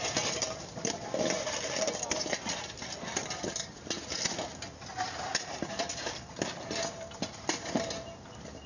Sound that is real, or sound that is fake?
fake